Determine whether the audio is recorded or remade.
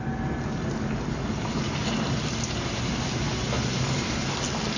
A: recorded